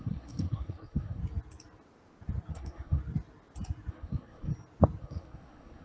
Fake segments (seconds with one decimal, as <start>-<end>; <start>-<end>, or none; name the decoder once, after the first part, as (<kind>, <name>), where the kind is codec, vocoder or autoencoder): 0.0-1.2 (codec, SNAC); 2.5-3.0; 3.9-4.5; 5.0-5.8